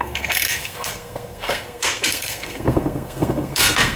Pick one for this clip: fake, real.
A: fake